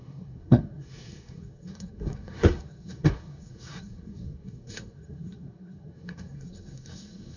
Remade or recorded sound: remade